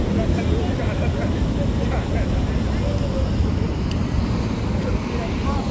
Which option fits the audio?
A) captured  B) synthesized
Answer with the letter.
A